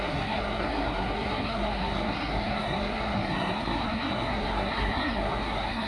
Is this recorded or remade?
remade